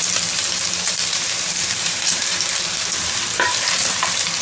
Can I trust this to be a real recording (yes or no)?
no